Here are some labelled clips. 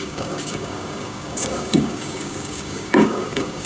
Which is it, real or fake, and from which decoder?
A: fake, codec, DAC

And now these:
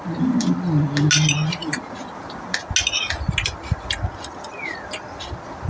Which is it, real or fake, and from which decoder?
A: real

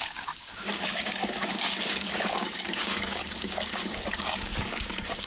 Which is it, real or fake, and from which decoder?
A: fake, codec, DAC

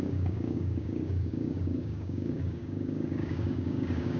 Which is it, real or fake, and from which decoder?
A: fake, codec, DAC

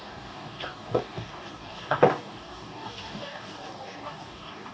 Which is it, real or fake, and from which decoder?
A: fake, codec, DAC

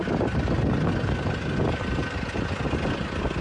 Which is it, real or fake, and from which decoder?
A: real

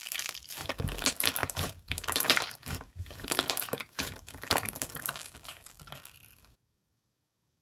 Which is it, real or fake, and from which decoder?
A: fake, codec, DAC